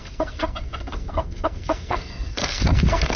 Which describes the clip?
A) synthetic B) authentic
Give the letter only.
A